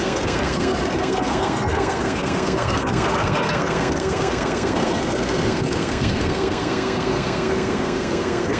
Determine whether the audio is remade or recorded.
remade